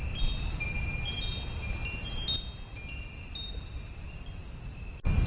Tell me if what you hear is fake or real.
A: real